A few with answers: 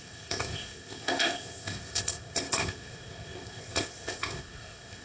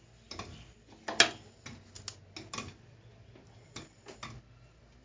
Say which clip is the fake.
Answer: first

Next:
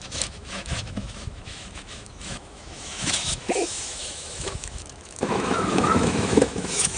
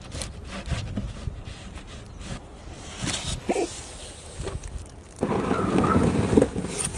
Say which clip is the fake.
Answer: first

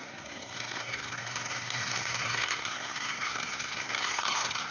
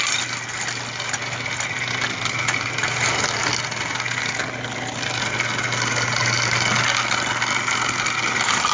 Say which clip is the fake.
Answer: first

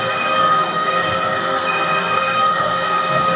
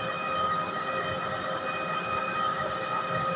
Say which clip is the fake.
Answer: first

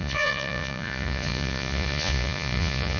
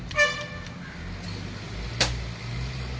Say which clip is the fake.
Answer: first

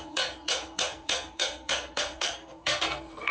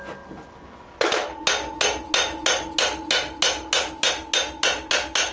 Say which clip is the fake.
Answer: first